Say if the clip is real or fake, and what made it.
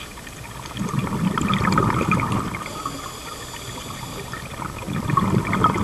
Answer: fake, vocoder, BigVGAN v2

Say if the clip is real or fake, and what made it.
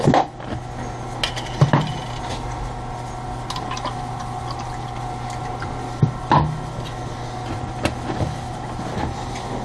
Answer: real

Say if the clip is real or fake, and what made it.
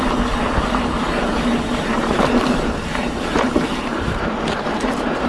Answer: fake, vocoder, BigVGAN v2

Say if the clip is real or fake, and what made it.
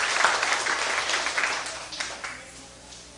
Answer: real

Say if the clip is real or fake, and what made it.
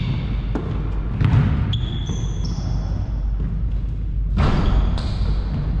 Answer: real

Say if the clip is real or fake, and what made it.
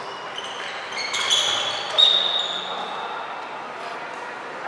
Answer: real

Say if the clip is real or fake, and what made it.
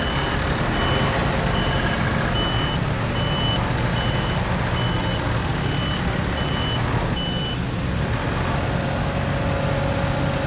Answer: real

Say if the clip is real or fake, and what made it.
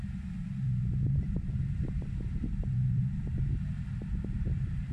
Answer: fake, vocoder, BigVGAN v2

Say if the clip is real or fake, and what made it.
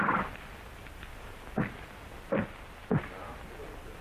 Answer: real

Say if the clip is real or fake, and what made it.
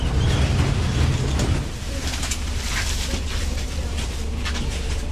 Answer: fake, vocoder, BigVGAN v2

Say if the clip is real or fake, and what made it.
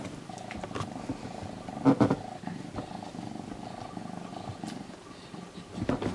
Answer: real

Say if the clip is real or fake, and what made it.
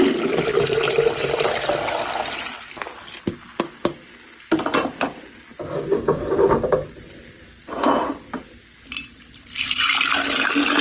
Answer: real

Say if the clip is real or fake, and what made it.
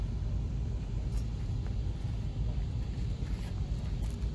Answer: real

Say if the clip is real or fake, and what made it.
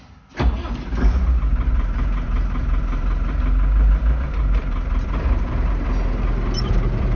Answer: fake, vocoder, BigVGAN v2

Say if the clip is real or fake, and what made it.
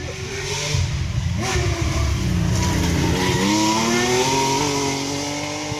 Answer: real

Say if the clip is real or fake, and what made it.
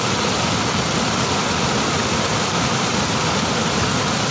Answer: real